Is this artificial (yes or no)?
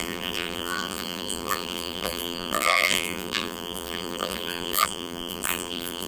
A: yes